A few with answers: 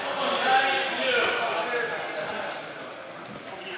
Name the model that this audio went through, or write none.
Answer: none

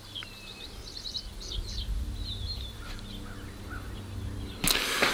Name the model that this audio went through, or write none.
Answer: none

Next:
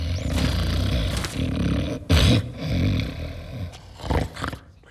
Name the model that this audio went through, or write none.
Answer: none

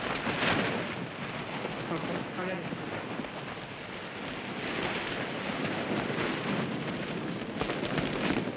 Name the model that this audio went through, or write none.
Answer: none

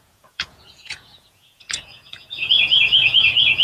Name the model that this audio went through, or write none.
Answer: vocoder, Vocos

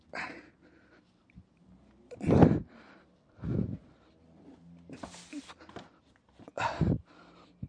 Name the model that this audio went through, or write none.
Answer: none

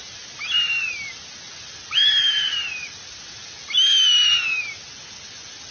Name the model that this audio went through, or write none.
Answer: none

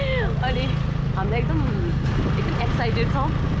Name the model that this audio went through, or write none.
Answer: none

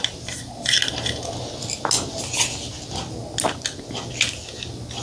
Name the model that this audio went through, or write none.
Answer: none